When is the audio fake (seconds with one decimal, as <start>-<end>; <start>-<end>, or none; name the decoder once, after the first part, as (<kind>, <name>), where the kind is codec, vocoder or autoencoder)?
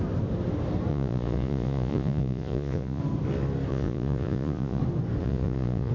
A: 0.9-3.0 (vocoder, Vocos); 3.7-4.8; 5.2-5.9